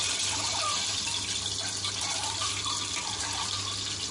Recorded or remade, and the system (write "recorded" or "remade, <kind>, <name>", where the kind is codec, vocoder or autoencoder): recorded